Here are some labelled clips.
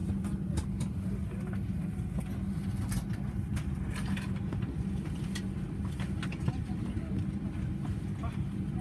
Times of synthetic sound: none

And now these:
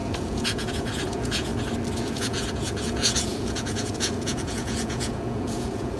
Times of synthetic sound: 0.0-1.5 (vocoder, Vocos); 2.0-6.0

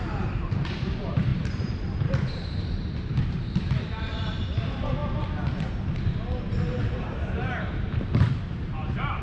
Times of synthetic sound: 0.0-5.0 (vocoder, BigVGAN v2); 6.8-9.2

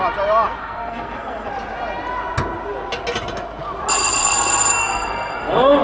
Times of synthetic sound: 0.6-1.5 (codec, SNAC); 4.8-5.8

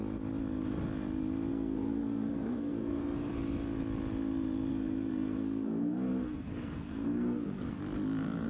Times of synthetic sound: 1.5-3.3 (codec, SNAC); 4.7-7.8

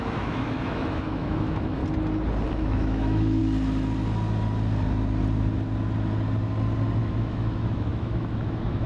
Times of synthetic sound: 0.0-1.8 (autoencoder, DAC-VAE); 2.5-3.4; 7.0-8.9

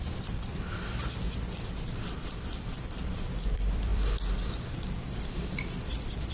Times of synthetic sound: 0.0-6.3 (vocoder, BigVGAN v2)

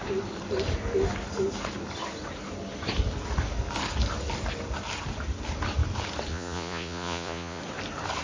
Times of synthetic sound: 6.3-7.6 (vocoder, Vocos)